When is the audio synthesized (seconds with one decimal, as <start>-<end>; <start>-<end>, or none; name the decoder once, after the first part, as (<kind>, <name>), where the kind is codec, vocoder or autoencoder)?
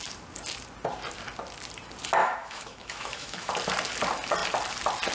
2.2-3.5 (autoencoder, DAC-VAE)